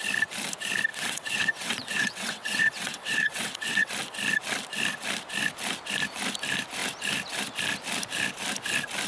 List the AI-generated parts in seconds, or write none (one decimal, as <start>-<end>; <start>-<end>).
0.9-3.9